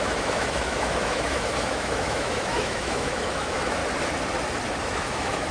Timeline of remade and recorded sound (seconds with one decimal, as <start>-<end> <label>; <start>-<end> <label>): 0.0-3.8 remade; 3.8-4.8 recorded; 4.8-5.5 remade